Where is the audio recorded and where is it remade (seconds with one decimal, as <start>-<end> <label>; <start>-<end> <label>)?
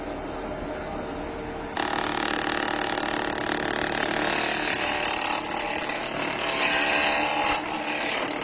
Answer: 0.0-2.5 recorded; 2.5-3.4 remade; 3.4-7.3 recorded; 7.3-8.4 remade